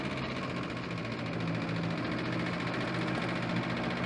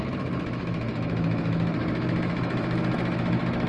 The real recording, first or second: first